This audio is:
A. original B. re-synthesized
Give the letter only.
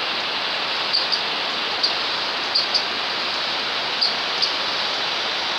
A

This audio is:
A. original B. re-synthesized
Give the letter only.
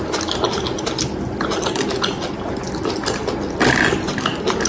A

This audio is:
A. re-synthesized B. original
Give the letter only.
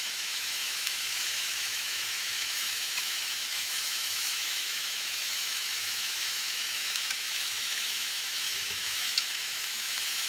A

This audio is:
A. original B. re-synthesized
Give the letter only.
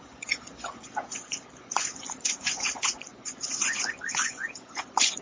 B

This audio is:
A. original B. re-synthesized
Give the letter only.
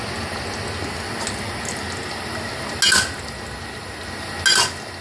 A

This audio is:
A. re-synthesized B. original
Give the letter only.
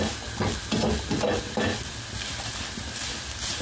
B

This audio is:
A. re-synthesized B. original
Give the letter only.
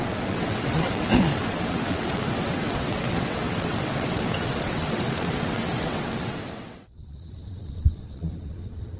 A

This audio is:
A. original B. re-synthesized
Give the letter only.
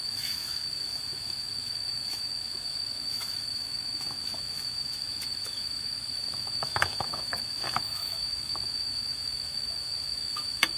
B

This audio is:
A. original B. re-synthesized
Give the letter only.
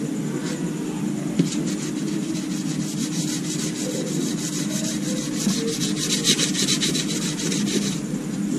A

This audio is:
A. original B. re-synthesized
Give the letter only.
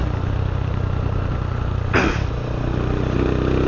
A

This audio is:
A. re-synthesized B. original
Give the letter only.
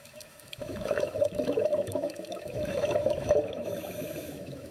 A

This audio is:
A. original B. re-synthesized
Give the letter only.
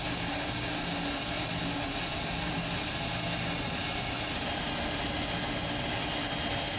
A